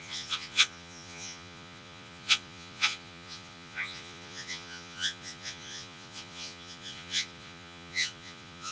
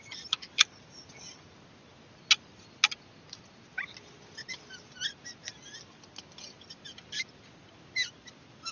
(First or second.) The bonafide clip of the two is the second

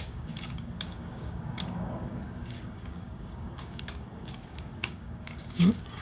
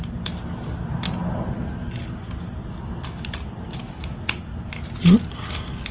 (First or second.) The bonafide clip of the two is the second